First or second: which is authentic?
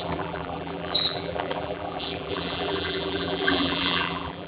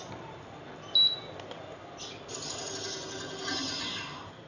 second